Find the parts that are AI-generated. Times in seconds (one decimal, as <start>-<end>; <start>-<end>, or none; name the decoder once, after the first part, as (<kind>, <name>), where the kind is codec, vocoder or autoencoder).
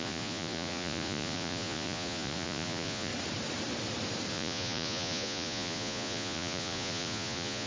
0.0-3.1 (vocoder, Vocos); 4.3-7.7